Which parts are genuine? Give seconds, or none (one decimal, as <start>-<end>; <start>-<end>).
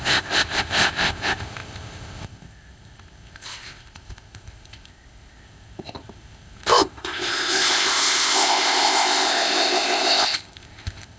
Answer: none